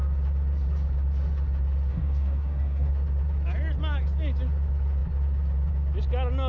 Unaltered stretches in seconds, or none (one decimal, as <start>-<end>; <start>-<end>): 0.0-1.9; 2.9-6.5